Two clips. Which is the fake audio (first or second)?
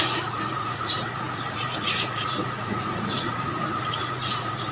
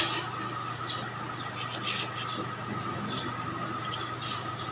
first